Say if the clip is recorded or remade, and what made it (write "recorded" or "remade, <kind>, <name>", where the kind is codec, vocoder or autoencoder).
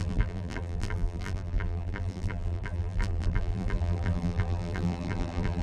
remade, vocoder, BigVGAN v2